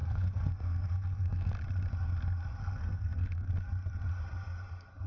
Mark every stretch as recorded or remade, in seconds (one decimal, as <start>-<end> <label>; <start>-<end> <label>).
0.0-1.5 remade; 1.5-2.6 recorded; 2.6-3.5 remade; 3.5-5.1 recorded